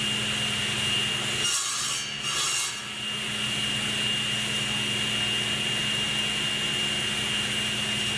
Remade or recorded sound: recorded